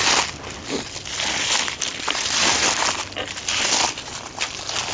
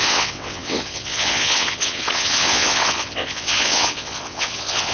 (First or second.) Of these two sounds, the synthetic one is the second